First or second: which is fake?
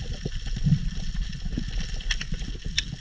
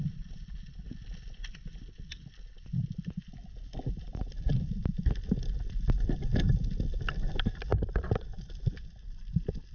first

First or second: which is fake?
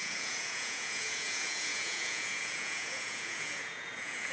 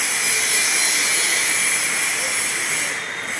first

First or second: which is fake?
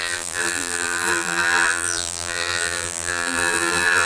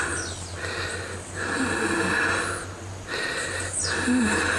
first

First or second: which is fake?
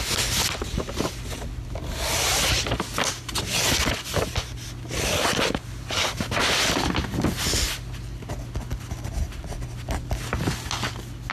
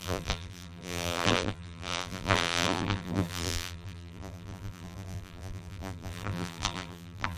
second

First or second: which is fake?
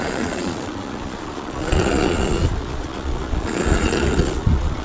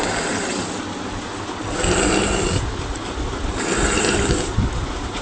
first